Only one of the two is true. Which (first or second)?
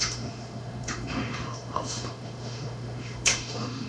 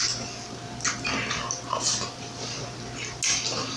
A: second